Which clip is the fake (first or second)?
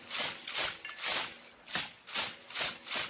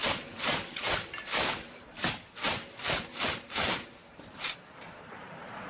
second